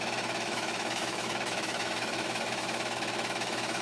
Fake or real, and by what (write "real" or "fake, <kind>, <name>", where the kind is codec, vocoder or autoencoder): fake, autoencoder, DAC-VAE